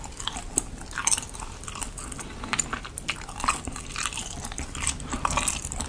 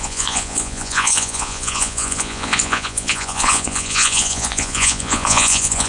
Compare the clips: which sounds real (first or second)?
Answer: first